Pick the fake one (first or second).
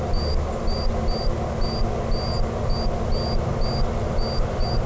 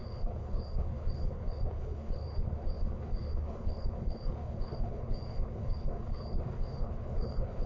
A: second